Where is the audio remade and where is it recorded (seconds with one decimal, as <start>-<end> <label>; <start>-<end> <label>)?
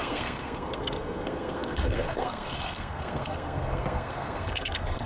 0.0-5.1 remade